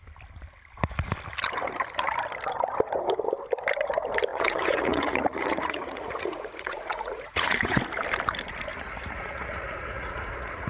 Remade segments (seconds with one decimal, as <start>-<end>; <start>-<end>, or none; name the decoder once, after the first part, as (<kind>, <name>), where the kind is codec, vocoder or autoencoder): 4.3-7.8 (vocoder, Vocos); 8.7-10.7